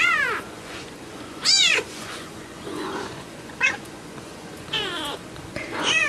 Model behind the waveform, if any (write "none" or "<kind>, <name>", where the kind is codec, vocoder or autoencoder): vocoder, Vocos